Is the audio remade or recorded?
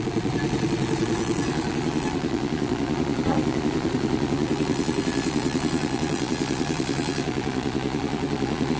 remade